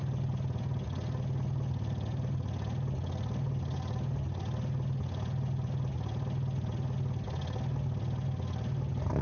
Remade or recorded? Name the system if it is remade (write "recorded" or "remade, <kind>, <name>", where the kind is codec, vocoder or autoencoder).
recorded